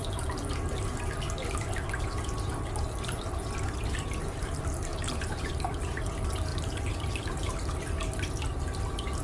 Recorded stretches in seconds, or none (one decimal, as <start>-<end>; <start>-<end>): 0.0-4.9; 5.5-6.5; 7.1-9.2